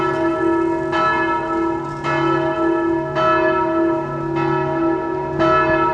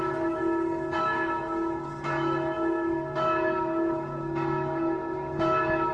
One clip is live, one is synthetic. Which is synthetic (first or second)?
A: second